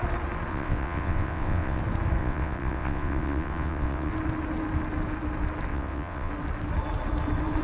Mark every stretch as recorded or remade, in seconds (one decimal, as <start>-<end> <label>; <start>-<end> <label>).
0.0-0.5 recorded; 0.5-1.8 remade; 1.8-2.2 recorded; 2.2-4.1 remade; 4.1-5.7 recorded; 5.7-6.3 remade; 6.3-7.6 recorded